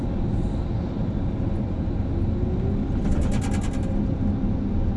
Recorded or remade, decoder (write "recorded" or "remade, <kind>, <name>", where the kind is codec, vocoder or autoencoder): recorded